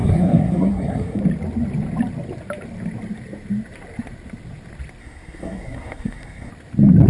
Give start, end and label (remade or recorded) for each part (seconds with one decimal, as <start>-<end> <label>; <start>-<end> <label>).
0.0-1.2 remade; 1.2-5.0 recorded; 5.0-6.5 remade; 6.5-7.1 recorded